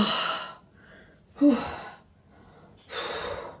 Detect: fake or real real